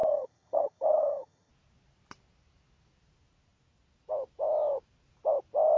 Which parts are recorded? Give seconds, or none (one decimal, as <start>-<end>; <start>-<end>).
1.5-5.8